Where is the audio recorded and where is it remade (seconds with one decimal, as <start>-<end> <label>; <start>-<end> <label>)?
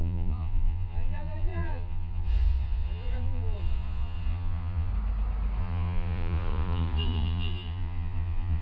0.0-4.9 remade; 4.9-5.6 recorded; 5.6-8.6 remade